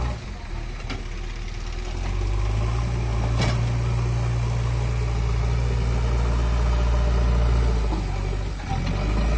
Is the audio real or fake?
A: real